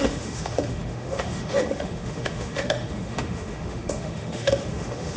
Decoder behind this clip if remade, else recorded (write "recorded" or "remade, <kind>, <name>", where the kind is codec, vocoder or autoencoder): remade, autoencoder, DAC-VAE